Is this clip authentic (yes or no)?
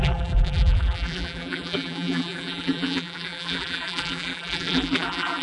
no